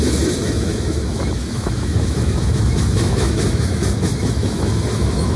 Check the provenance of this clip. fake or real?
fake